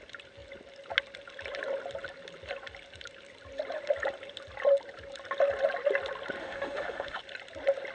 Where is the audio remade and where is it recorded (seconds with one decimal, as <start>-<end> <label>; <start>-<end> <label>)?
0.0-6.4 recorded; 6.4-7.2 remade; 7.2-7.9 recorded